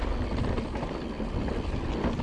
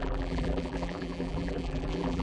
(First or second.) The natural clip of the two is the first